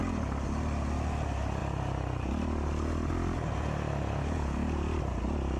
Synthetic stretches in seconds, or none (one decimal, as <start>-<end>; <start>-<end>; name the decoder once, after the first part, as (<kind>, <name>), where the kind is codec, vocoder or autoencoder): none